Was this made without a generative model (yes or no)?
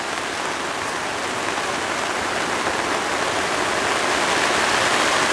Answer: yes